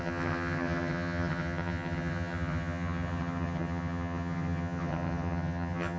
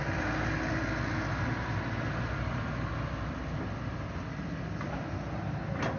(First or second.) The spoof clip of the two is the first